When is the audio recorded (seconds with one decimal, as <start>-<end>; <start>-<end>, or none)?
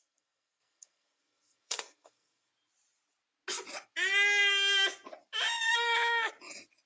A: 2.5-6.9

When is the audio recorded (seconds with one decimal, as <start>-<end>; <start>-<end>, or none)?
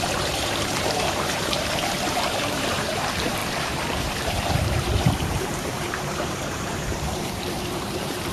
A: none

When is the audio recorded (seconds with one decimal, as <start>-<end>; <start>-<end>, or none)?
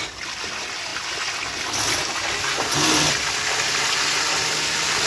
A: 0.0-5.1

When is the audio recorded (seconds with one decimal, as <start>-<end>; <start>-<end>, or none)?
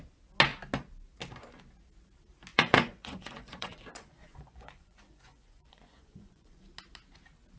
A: 0.0-2.5; 6.6-7.6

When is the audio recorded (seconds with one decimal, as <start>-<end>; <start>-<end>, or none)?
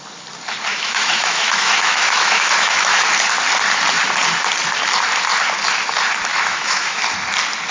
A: 0.0-0.7; 3.1-6.3; 7.0-7.7